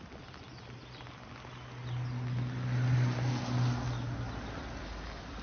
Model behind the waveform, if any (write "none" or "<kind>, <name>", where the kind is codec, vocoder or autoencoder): none